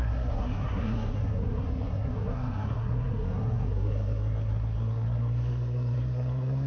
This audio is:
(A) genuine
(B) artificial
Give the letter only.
B